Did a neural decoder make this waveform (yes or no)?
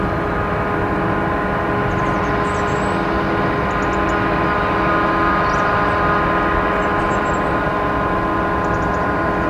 no